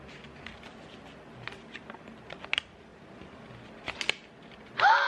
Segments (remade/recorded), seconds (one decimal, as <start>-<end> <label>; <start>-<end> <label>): 0.0-2.9 recorded; 2.9-3.9 remade; 3.9-5.1 recorded